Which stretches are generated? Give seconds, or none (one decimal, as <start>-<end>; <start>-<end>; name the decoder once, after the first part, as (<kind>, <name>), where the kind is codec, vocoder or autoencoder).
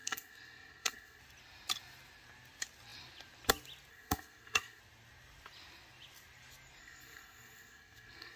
0.0-1.2 (codec, SNAC); 3.9-4.8; 6.8-8.4